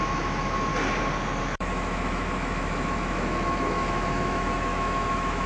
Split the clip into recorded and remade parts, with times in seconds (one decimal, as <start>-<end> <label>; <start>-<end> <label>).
0.0-0.7 remade; 0.7-1.4 recorded; 1.4-5.5 remade